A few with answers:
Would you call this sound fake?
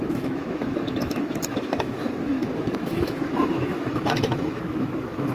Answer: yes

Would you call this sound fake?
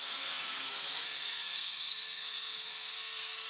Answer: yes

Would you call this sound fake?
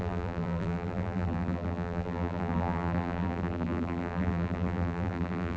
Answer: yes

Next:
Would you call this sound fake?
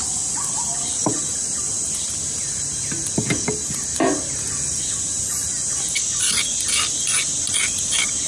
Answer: no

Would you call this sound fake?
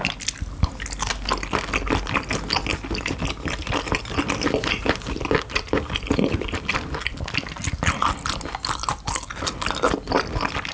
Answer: no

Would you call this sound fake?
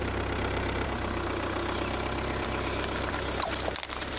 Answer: yes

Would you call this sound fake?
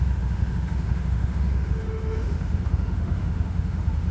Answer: yes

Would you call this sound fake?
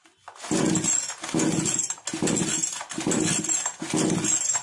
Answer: no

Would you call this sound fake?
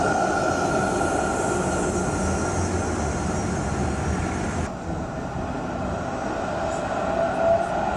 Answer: no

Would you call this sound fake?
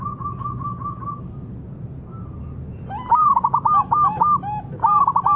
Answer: no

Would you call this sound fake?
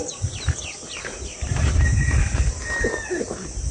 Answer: no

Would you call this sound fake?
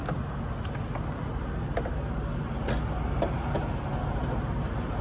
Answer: no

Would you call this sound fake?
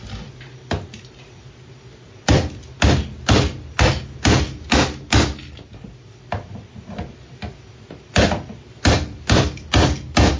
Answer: no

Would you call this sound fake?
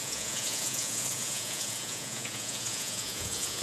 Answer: yes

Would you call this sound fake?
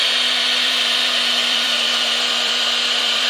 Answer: yes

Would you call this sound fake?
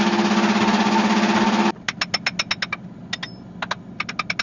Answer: no